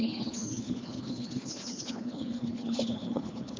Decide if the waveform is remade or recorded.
remade